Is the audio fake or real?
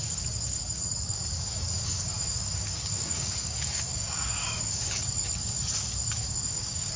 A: fake